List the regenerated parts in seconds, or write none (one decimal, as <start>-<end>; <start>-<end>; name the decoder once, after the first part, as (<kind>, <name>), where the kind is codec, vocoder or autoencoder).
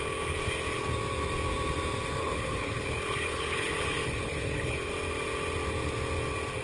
2.2-4.9 (codec, HILCodec)